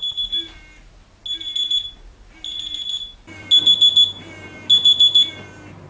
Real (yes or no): yes